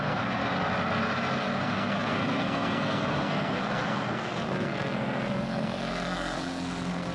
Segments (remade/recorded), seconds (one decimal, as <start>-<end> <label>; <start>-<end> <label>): 0.0-0.4 remade; 0.4-1.6 recorded; 1.6-7.1 remade